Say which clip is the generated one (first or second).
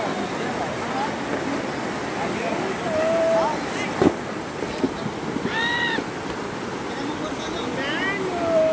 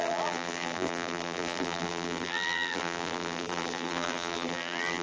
second